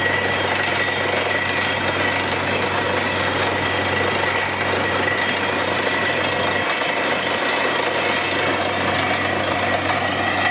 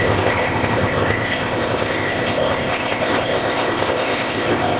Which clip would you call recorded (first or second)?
first